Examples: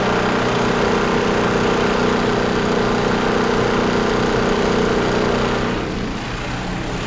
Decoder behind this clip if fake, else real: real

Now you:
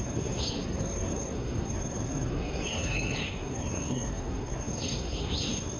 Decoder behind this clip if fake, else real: fake, codec, SNAC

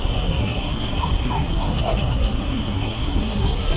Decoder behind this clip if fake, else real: fake, codec, SNAC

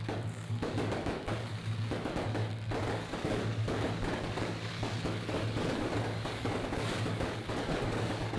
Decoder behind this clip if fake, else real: fake, codec, DAC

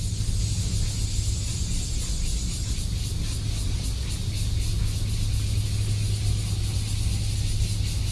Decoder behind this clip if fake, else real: real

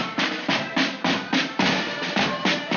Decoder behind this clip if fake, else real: real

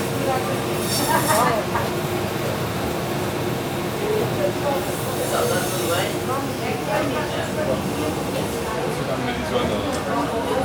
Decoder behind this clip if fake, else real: real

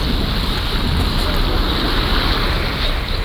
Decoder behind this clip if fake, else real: real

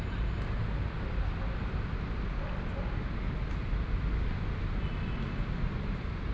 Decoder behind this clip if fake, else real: real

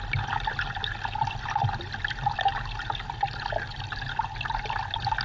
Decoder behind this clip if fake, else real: real